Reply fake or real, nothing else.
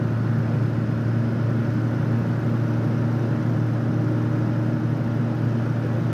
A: real